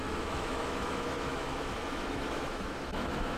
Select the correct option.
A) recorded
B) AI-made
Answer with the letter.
B